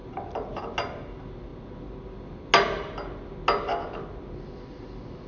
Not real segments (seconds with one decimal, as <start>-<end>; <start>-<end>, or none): none